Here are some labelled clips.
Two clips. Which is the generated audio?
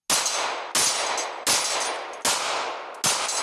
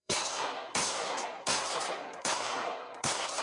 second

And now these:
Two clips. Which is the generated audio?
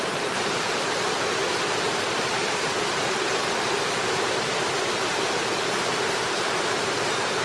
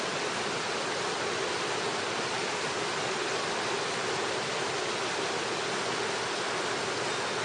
first